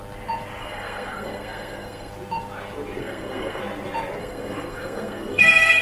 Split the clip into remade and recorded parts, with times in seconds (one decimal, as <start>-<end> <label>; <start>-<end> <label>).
0.0-0.6 recorded; 0.6-2.1 remade; 2.1-3.0 recorded; 3.0-3.6 remade; 3.6-4.2 recorded; 4.2-5.8 remade